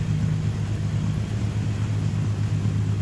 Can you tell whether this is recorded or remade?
recorded